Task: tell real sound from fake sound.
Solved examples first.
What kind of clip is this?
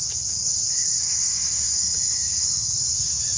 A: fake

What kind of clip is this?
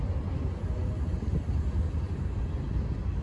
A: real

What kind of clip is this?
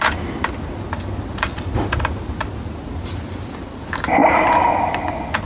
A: real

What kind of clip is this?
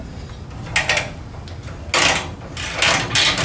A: real